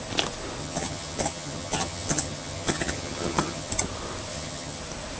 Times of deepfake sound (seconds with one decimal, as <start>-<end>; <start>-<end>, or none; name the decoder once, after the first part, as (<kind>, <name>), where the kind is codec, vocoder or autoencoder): 0.6-3.7 (vocoder, HiFi-GAN); 4.3-4.8